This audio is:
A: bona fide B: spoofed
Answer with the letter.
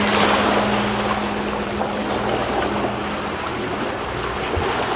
A